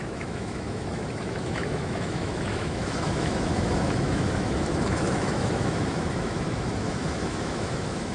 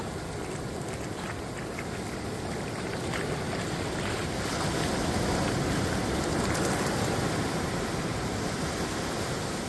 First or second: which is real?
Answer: second